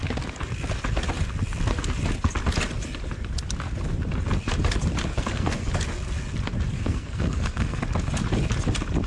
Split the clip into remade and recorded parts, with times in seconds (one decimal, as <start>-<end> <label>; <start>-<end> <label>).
0.0-5.1 recorded; 5.1-5.7 remade; 5.7-6.7 recorded; 6.7-7.8 remade; 7.8-9.1 recorded